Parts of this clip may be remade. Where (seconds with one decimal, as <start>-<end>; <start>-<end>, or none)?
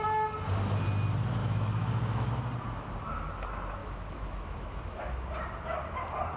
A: 1.4-2.3; 3.8-5.0